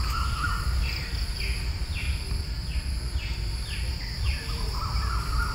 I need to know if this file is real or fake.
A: real